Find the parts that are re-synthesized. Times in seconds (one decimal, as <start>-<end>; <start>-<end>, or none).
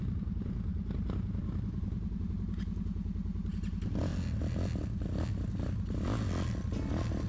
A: none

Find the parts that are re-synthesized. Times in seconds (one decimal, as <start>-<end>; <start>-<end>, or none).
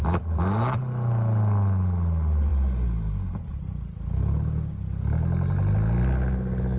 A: none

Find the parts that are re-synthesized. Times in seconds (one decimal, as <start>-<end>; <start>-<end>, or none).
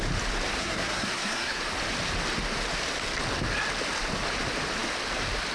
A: 0.6-1.6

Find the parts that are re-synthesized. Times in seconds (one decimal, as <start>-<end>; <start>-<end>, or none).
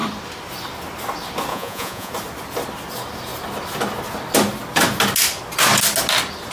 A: 1.5-2.1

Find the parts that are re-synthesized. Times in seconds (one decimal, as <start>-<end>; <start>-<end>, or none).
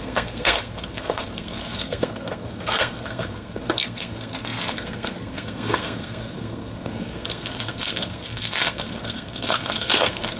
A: 0.0-10.4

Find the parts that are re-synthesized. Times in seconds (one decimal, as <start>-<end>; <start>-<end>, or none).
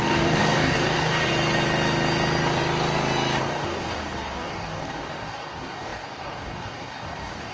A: 0.0-1.3; 3.4-7.5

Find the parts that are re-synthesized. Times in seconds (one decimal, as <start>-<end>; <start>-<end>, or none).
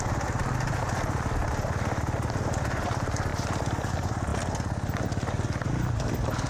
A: none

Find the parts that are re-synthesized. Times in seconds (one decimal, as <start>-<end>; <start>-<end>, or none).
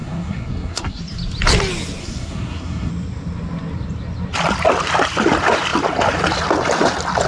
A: 0.0-1.0; 2.0-2.9